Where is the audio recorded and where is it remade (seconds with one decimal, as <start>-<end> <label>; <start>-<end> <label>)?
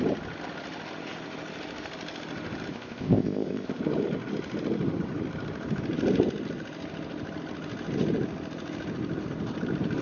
0.0-2.7 recorded; 2.7-3.8 remade; 3.8-10.0 recorded